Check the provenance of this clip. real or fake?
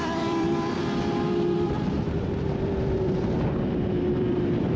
fake